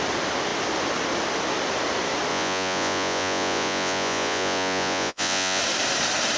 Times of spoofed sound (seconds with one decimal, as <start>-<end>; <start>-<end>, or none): 2.3-5.6